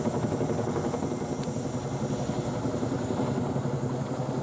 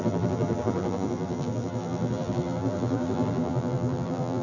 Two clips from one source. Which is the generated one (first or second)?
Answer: second